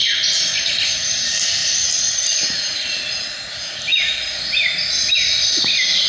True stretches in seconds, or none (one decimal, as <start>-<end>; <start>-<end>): 0.0-6.1